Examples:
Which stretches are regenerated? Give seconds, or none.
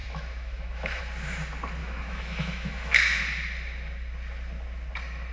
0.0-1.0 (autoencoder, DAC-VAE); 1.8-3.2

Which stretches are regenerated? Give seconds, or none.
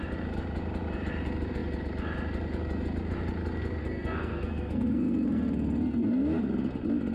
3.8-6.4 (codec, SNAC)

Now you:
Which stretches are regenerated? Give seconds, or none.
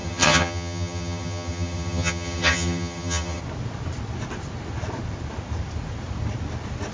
0.0-3.4 (vocoder, HiFi-GAN)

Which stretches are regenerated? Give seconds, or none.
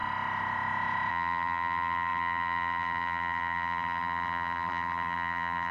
1.1-5.7 (vocoder, BigVGAN v2)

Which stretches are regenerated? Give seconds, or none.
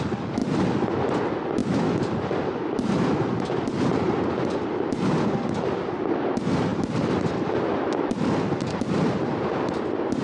0.4-1.0 (vocoder, BigVGAN v2); 1.6-6.2; 6.7-7.5